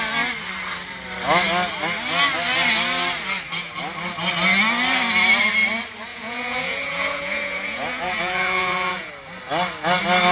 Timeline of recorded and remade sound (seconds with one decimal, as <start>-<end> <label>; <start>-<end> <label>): 0.0-6.1 recorded; 6.1-9.1 remade; 9.1-10.3 recorded